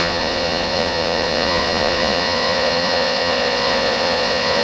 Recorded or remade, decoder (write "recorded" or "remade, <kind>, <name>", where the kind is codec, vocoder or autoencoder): remade, vocoder, Vocos